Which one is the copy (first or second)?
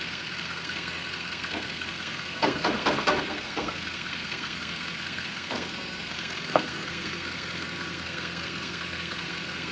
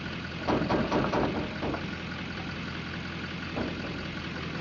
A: first